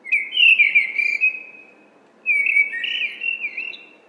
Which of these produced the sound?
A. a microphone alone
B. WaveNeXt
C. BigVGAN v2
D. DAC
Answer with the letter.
A